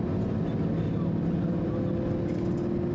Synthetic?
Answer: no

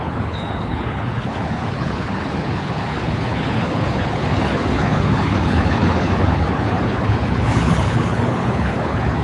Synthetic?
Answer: yes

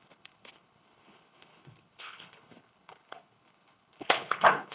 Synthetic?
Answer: yes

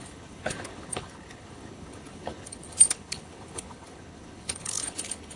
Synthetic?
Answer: yes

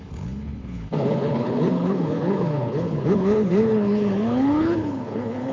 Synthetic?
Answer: yes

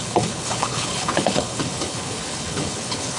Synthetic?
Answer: yes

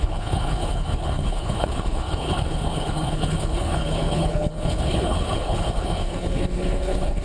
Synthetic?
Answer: yes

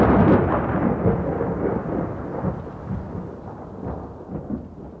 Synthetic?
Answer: no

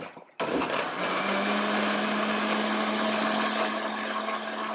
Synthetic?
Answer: no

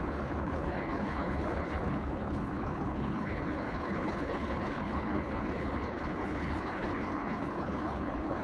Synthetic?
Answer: yes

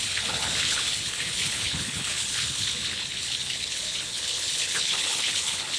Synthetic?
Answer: yes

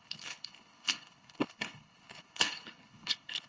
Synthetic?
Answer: yes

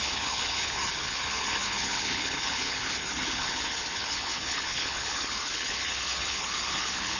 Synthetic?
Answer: yes